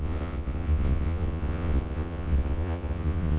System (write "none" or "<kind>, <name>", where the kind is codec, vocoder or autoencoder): vocoder, Vocos